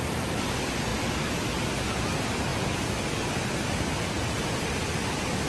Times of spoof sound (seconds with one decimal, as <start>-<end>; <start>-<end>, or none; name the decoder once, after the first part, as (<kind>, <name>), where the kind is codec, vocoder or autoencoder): none